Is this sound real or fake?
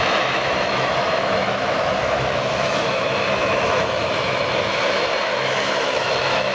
fake